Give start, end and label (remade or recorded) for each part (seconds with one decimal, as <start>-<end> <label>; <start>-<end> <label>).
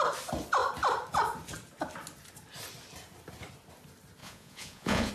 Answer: 0.0-4.2 recorded; 4.2-5.1 remade